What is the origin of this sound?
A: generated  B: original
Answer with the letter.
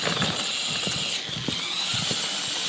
B